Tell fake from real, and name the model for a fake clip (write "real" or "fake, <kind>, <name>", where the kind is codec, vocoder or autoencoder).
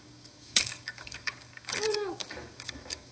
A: fake, codec, DAC